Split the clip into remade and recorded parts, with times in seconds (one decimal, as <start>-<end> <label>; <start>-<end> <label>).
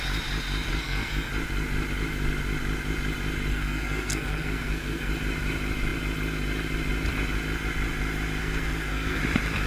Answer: 0.0-0.7 recorded; 0.7-1.3 remade; 1.3-3.5 recorded; 3.5-5.1 remade; 5.1-8.4 recorded; 8.4-9.2 remade; 9.2-9.7 recorded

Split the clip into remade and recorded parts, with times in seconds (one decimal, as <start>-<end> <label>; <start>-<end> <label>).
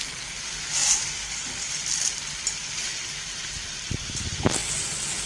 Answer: 0.0-5.3 recorded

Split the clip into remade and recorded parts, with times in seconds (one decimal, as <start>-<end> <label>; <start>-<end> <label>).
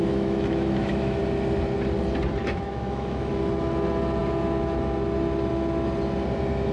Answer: 0.0-1.2 remade; 1.2-2.4 recorded; 2.4-3.3 remade; 3.3-6.7 recorded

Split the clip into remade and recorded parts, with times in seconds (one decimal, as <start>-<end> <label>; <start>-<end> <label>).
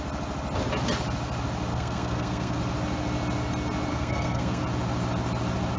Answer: 0.0-1.7 recorded; 1.7-2.6 remade; 2.6-3.9 recorded; 3.9-4.6 remade; 4.6-5.8 recorded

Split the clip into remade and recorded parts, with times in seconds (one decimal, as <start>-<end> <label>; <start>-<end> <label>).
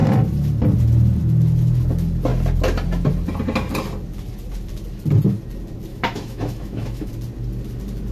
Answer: 0.0-5.9 recorded; 5.9-7.1 remade; 7.1-8.1 recorded